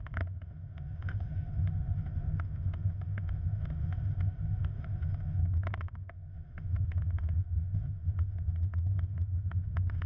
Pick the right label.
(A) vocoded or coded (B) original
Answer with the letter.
A